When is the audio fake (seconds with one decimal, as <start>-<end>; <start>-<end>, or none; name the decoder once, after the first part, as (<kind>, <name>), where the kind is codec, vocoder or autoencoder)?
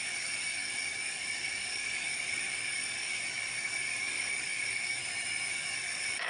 0.0-5.0 (codec, DAC); 5.5-6.3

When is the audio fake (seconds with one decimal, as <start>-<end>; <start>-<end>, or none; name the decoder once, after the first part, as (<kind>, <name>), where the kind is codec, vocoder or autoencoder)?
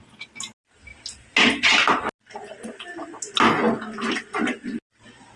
none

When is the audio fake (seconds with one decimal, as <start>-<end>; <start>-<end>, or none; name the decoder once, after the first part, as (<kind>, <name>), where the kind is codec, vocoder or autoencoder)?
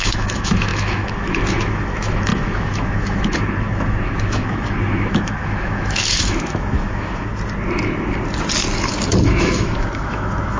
0.0-7.3 (autoencoder, DAC-VAE); 9.1-10.6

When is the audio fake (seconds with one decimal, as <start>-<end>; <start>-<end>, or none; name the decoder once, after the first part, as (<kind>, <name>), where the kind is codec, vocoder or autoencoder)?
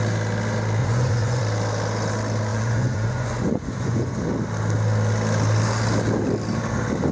0.8-1.4 (vocoder, Vocos); 2.5-4.2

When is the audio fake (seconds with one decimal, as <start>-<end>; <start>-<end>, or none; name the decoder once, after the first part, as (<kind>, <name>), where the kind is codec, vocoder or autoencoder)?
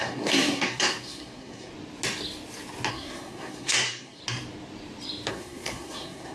0.0-1.7 (codec, SNAC); 2.9-4.2; 5.3-6.3